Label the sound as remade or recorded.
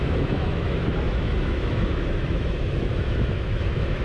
remade